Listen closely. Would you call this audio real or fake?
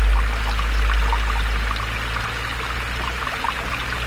real